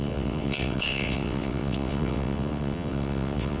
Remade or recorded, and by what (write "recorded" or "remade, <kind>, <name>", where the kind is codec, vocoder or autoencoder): remade, vocoder, WaveNeXt